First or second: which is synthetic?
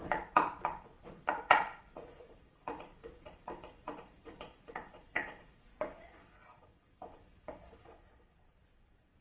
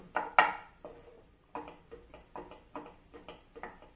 first